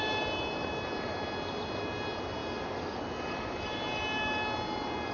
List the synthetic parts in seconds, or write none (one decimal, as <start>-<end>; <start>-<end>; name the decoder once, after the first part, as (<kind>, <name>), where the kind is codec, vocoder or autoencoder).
none